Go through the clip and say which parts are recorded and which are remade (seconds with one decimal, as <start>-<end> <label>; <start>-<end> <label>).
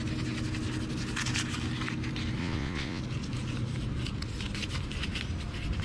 0.0-2.4 recorded; 2.4-3.0 remade; 3.0-5.8 recorded